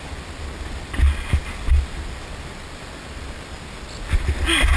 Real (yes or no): yes